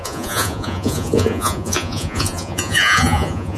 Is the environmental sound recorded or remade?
remade